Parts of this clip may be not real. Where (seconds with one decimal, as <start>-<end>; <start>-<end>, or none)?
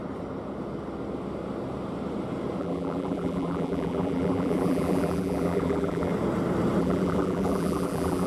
2.6-6.1; 6.8-8.3